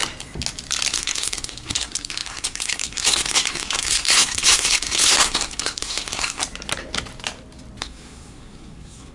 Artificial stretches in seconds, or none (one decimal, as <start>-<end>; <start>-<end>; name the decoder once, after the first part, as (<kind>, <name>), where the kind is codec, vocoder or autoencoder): 0.9-6.4 (codec, SNAC); 7.8-9.1